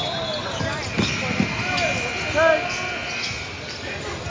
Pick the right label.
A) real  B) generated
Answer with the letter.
A